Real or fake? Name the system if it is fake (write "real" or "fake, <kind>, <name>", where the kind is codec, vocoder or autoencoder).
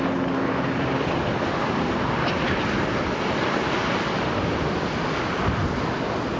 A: real